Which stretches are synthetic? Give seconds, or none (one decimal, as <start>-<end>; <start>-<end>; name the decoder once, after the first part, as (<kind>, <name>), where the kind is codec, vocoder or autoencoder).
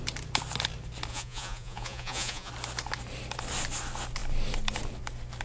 1.1-2.5 (vocoder, Vocos)